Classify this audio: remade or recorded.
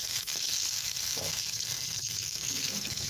remade